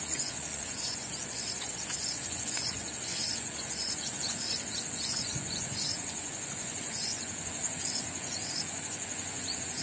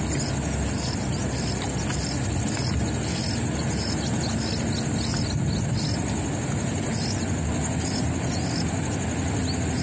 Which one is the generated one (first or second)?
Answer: first